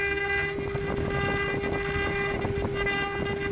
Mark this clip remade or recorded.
recorded